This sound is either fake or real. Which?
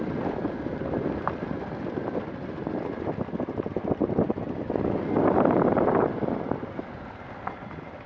real